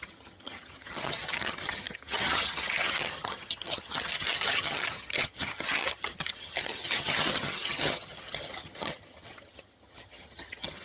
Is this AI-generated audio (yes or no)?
yes